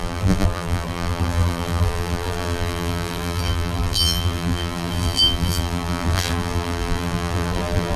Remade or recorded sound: remade